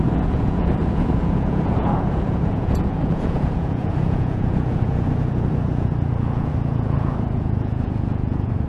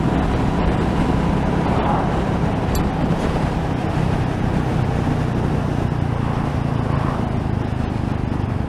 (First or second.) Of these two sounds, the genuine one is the second